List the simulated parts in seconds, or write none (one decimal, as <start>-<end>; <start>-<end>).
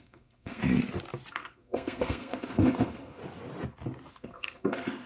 0.0-0.6; 1.3-3.2; 4.1-5.1